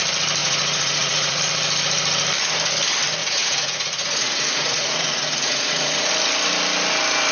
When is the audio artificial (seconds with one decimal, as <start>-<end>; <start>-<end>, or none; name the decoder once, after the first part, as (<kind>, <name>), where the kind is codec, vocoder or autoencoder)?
0.4-1.4 (vocoder, Vocos); 3.2-6.1